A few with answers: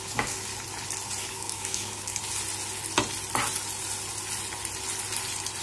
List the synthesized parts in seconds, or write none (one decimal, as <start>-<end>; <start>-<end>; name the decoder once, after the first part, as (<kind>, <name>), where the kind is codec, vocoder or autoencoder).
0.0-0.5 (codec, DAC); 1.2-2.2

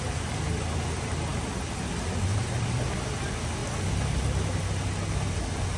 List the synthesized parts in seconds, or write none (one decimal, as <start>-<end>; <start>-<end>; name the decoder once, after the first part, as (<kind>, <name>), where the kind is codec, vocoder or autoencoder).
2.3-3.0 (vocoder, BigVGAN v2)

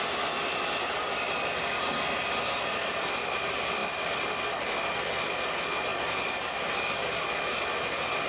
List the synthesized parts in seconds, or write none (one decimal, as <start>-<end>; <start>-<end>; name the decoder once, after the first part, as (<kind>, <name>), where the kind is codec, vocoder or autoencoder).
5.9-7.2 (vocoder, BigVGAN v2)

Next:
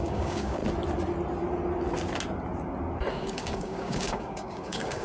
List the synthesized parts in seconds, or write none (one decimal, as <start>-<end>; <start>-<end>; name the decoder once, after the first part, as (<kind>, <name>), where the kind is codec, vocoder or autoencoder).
0.0-0.6 (codec, DAC); 3.1-5.0

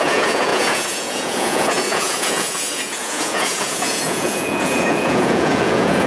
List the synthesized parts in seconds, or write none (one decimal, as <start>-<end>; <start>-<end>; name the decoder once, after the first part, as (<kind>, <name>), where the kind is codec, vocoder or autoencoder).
0.0-6.1 (vocoder, Vocos)

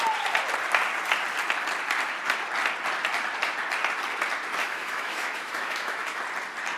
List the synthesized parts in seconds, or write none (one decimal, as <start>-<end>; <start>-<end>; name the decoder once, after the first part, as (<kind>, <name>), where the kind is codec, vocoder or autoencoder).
4.6-6.2 (autoencoder, DAC-VAE)

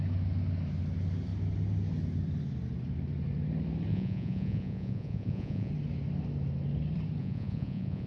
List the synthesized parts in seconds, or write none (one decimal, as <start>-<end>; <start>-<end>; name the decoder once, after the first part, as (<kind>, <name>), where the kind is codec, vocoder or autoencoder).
3.9-5.7 (vocoder, Vocos); 7.2-8.1

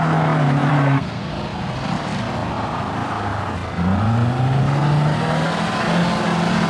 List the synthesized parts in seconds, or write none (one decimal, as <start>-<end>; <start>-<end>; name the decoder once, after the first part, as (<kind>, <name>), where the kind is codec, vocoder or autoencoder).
0.7-1.2 (codec, SNAC)